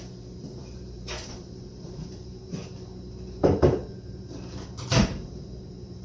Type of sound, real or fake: fake